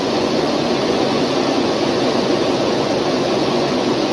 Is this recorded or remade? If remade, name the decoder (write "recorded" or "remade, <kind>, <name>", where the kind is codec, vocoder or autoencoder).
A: remade, vocoder, Vocos